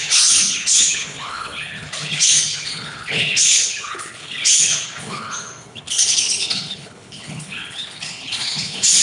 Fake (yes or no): yes